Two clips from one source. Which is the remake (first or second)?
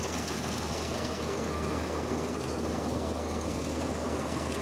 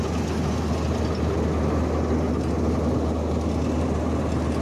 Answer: first